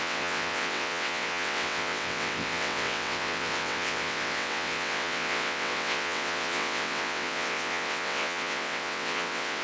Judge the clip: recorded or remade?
remade